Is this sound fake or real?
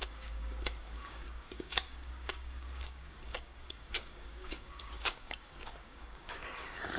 fake